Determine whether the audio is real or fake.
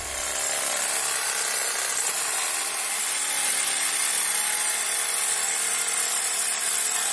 real